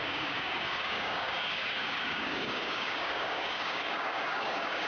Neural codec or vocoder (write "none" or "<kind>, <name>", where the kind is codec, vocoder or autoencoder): codec, DAC